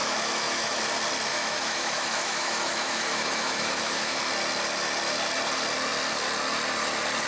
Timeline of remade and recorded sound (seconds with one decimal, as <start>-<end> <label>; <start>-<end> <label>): 0.0-0.8 remade; 0.8-1.3 recorded; 1.3-4.2 remade; 4.2-7.3 recorded